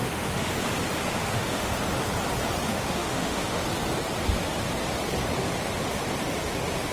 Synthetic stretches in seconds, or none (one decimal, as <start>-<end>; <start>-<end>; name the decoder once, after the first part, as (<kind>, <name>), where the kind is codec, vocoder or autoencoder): 0.0-0.5 (autoencoder, DAC-VAE); 1.2-1.7; 2.7-3.7

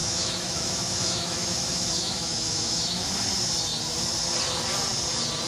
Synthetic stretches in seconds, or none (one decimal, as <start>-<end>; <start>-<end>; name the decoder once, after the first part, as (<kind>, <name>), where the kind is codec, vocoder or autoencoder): 0.0-3.3 (autoencoder, DAC-VAE)

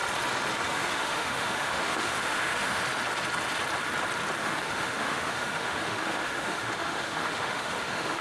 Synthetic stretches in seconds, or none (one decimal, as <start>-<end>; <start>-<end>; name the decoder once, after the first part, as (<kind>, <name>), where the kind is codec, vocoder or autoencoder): 0.7-2.8 (autoencoder, DAC-VAE); 4.4-8.2